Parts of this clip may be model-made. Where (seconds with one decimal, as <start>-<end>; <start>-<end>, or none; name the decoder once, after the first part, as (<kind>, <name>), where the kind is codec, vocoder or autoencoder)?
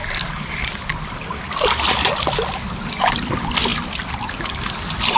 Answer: none